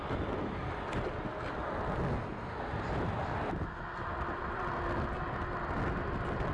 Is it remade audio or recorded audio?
recorded